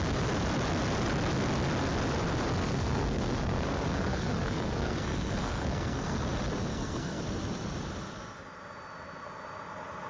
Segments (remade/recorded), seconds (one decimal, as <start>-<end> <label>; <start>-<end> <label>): 0.0-2.6 recorded; 2.6-6.2 remade; 6.2-6.7 recorded; 6.7-7.2 remade; 7.2-10.1 recorded